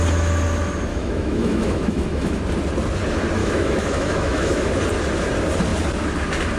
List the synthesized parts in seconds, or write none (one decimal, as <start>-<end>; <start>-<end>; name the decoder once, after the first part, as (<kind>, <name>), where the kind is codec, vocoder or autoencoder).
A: 0.9-2.4 (autoencoder, DAC-VAE); 3.4-4.7